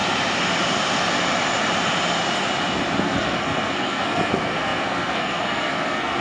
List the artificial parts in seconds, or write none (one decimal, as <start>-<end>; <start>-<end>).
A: 3.0-6.2

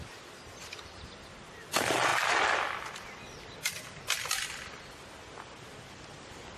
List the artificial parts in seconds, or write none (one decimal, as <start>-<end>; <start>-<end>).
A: none